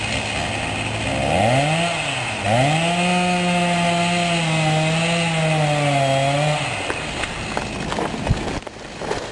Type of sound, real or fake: real